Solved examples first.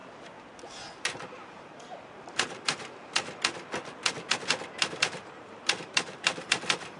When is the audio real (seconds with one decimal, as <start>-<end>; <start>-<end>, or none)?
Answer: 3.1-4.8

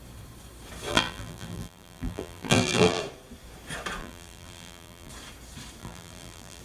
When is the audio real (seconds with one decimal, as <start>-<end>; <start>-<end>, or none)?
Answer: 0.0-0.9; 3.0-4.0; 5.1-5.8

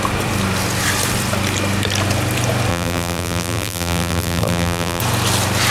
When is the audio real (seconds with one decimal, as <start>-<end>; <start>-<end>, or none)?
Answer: 0.0-2.7; 5.0-5.7